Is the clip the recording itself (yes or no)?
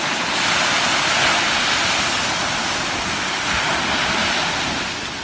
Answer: yes